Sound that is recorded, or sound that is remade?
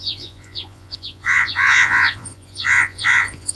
remade